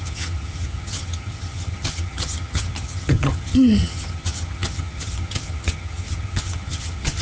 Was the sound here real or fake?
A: fake